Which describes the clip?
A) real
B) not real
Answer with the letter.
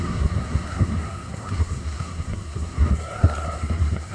B